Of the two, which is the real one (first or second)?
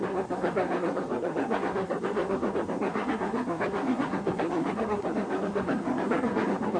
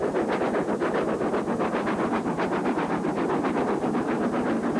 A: second